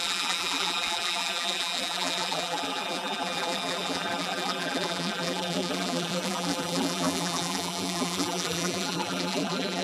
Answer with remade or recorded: remade